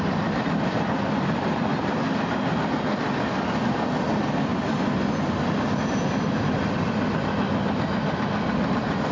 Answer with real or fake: real